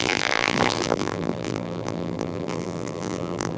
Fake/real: fake